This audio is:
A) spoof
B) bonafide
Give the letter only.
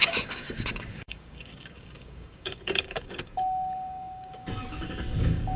A